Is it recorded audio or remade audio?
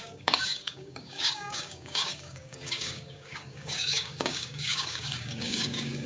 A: remade